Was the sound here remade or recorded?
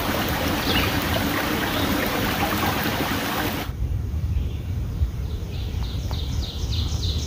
recorded